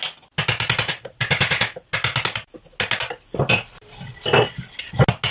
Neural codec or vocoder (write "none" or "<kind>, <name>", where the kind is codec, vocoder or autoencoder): none